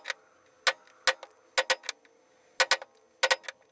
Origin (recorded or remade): recorded